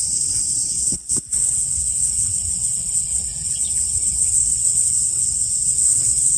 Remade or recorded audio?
remade